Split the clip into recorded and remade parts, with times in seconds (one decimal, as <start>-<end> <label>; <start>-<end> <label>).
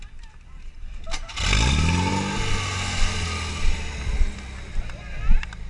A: 0.0-5.7 recorded